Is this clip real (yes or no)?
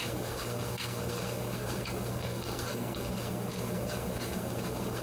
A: no